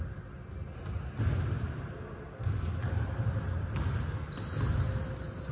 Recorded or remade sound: recorded